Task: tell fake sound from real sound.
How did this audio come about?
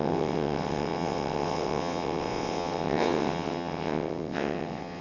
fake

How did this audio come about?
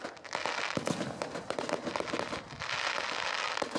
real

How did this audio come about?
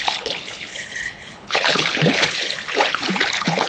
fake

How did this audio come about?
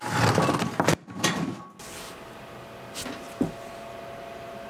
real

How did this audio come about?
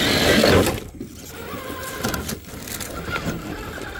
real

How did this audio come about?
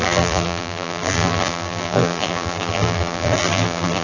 fake